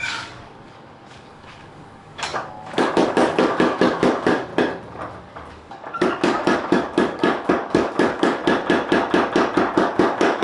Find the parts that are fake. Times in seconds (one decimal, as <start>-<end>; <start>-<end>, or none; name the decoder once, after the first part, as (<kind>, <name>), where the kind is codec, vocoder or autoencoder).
0.0-4.5 (codec, DAC); 5.2-8.4; 9.7-10.4

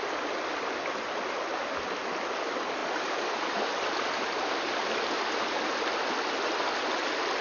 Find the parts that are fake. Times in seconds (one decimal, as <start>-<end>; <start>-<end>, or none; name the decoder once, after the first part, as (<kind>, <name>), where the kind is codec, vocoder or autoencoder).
none

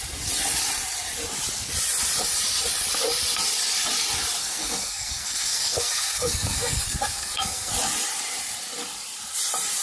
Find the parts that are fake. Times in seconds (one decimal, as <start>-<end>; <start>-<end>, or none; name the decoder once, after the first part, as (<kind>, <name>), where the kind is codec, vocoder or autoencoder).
4.4-7.7 (codec, SNAC)

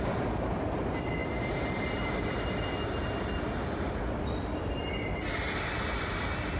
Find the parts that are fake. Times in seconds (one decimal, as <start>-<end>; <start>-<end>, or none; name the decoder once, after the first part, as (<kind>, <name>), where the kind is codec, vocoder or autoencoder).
none

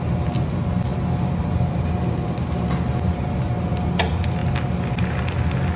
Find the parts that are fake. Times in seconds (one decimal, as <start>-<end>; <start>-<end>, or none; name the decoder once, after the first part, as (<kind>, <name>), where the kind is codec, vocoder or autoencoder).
none

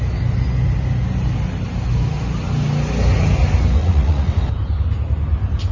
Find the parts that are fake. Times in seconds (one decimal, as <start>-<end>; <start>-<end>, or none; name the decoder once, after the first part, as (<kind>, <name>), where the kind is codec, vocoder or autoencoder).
3.8-4.3 (vocoder, Vocos)

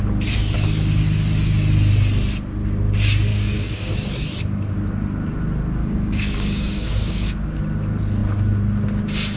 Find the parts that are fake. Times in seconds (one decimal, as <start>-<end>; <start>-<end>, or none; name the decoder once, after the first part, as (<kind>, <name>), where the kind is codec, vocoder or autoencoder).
3.3-3.9 (codec, DAC); 5.8-7.6